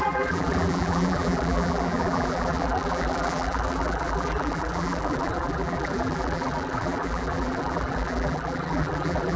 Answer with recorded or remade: remade